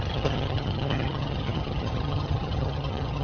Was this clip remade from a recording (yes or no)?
yes